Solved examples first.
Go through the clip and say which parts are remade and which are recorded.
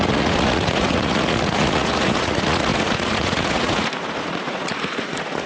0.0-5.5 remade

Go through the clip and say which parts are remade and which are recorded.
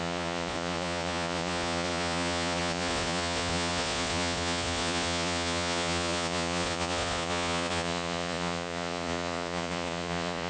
0.0-10.5 remade